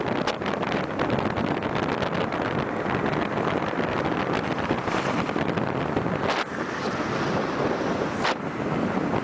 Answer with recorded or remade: recorded